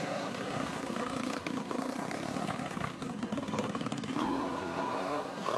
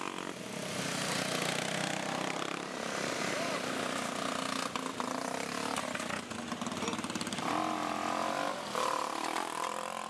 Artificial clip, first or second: first